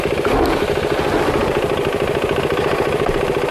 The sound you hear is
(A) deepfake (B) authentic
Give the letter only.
B